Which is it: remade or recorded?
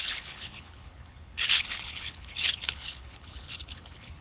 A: remade